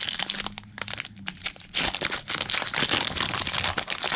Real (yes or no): yes